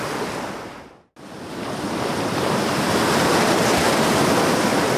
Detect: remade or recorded recorded